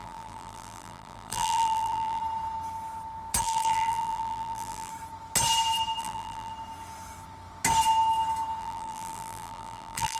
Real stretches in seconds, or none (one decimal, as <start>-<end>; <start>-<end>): 2.2-3.4; 4.9-6.0; 6.5-8.6